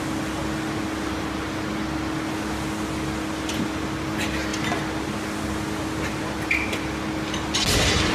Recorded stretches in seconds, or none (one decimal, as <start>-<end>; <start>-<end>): 0.0-8.1